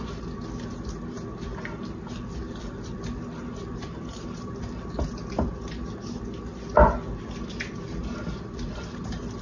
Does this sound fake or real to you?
real